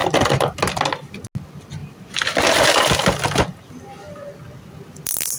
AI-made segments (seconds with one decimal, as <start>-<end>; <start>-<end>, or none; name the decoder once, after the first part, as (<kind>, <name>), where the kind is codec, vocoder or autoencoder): none